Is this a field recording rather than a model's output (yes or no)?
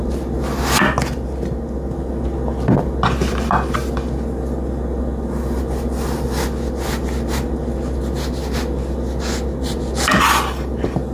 yes